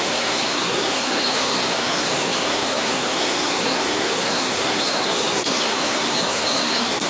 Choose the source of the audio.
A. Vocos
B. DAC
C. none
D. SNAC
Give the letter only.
D